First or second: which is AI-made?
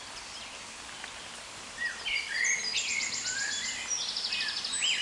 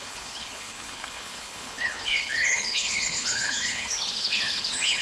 second